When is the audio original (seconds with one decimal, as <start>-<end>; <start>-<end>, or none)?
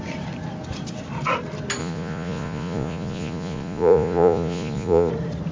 0.0-1.8; 5.1-5.5